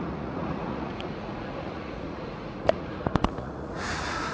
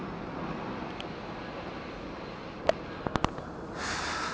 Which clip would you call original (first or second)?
second